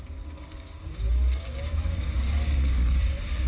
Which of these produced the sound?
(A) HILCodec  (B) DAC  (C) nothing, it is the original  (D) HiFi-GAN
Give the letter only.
B